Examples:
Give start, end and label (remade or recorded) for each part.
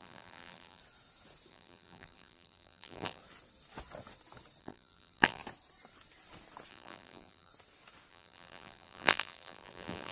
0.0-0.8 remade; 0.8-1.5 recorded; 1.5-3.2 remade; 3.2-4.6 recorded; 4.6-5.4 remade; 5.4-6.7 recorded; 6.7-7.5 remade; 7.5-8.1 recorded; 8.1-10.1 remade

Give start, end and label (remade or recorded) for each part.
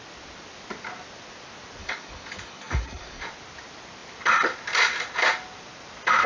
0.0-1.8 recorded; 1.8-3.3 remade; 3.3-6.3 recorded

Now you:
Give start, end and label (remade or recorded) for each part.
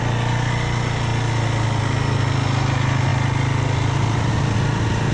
0.0-5.1 recorded